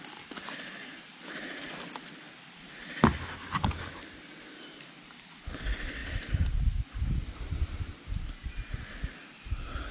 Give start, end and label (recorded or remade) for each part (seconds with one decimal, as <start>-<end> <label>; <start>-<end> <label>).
0.0-9.9 recorded